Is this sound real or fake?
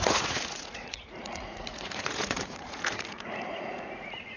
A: fake